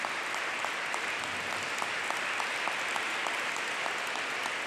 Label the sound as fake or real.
real